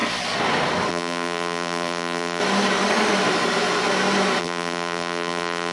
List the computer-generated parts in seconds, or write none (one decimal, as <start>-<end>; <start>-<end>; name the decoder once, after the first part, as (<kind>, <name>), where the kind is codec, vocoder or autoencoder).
0.9-2.4 (vocoder, BigVGAN v2); 4.4-5.7